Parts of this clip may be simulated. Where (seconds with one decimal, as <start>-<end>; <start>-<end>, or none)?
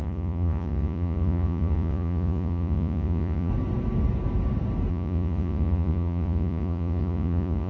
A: 0.0-3.5; 4.9-7.7